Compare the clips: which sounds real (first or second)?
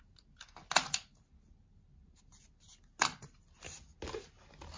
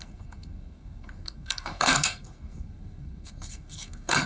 first